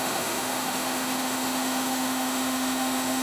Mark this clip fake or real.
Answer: fake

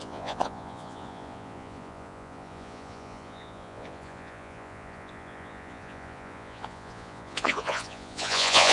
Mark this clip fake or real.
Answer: fake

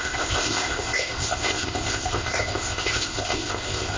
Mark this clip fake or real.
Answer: fake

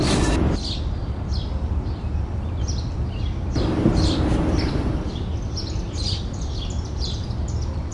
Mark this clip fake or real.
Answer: real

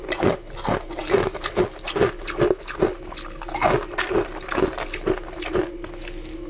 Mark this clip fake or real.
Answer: real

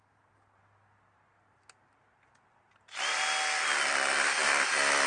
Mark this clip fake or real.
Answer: real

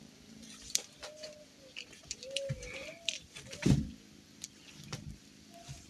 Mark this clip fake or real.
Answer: fake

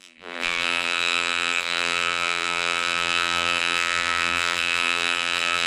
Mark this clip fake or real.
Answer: fake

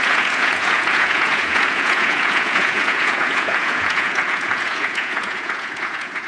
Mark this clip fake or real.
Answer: fake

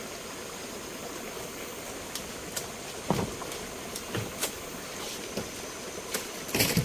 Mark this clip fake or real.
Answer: real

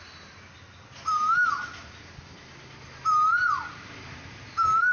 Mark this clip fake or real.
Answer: real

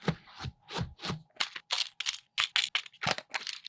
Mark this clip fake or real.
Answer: real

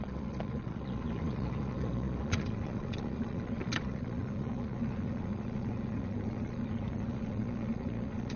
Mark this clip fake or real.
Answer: fake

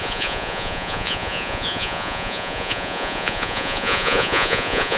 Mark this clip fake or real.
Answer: fake